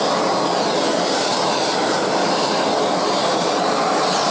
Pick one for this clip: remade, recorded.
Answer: remade